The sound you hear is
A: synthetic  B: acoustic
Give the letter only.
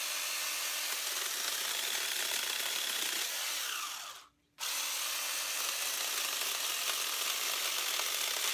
B